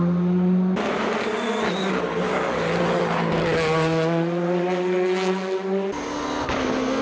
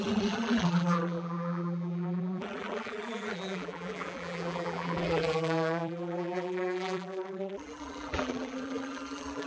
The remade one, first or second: second